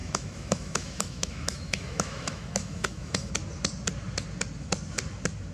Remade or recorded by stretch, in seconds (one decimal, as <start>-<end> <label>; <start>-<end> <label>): 0.0-3.3 remade; 3.3-5.5 recorded

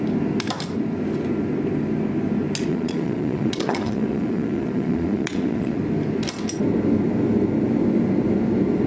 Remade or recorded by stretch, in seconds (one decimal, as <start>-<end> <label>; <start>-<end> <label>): 0.0-2.7 recorded; 2.7-5.8 remade; 5.8-8.9 recorded

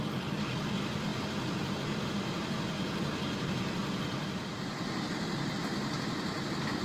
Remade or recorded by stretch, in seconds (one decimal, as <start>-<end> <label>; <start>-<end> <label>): 0.0-6.8 recorded

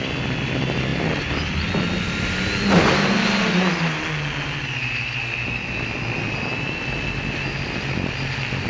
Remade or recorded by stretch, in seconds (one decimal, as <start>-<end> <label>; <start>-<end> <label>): 0.0-8.7 recorded

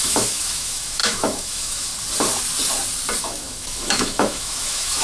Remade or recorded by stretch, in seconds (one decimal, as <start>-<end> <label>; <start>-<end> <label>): 0.0-1.9 remade; 1.9-3.2 recorded; 3.2-5.0 remade

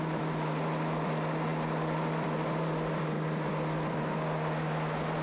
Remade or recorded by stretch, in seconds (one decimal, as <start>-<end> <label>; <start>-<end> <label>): 0.0-5.2 recorded

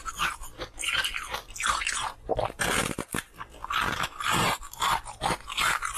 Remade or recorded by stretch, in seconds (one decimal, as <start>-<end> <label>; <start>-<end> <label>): 0.0-6.0 recorded

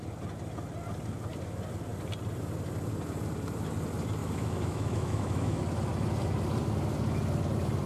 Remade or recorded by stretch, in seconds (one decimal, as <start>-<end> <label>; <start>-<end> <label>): 0.0-4.2 recorded; 4.2-5.6 remade; 5.6-7.9 recorded